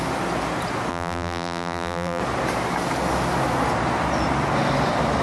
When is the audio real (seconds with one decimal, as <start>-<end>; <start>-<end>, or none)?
0.0-0.9; 2.2-5.2